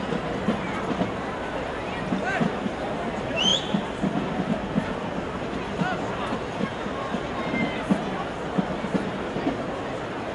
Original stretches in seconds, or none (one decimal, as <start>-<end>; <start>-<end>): 0.0-3.5; 4.2-6.7; 7.3-10.3